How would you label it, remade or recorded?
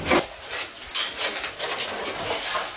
recorded